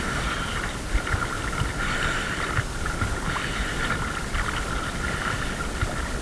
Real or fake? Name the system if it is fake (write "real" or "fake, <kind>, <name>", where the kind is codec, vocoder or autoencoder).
real